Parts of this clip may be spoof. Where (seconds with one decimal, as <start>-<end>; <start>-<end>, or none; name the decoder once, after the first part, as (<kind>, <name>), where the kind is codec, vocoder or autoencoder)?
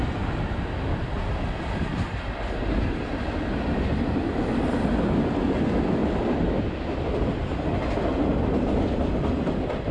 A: 6.0-6.8 (vocoder, BigVGAN v2)